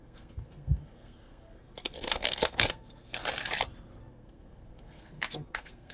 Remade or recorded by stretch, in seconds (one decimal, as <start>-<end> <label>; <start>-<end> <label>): 0.0-3.2 remade; 3.2-4.1 recorded; 4.1-5.9 remade